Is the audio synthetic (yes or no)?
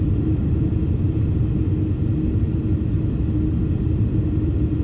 no